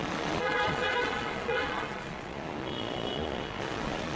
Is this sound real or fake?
fake